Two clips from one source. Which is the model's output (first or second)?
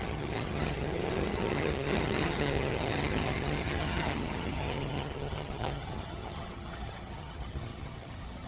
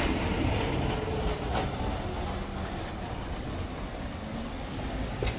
first